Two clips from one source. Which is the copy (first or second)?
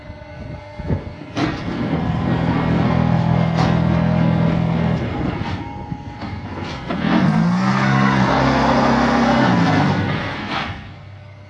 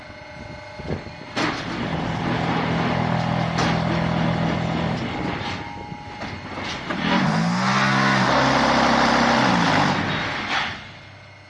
first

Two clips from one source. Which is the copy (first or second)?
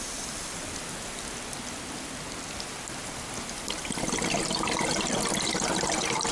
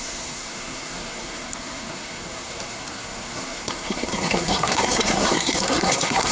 second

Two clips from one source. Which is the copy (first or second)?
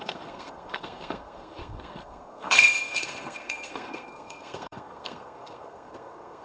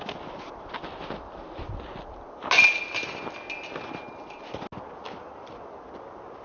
first